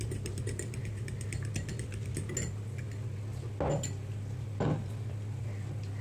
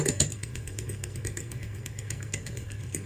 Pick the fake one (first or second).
second